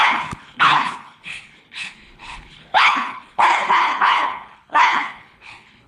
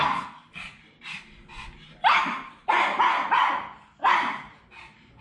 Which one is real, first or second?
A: second